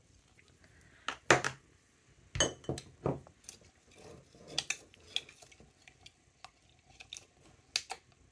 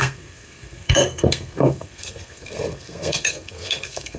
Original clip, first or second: first